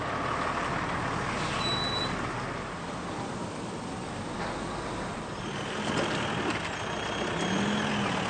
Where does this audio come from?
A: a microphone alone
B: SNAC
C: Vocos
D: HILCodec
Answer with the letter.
A